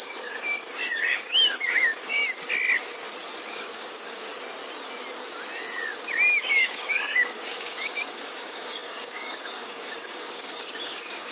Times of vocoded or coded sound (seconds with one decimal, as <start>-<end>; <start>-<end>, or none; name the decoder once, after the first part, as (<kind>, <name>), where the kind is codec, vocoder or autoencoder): 0.0-2.2 (codec, DAC); 3.5-4.3; 6.4-11.3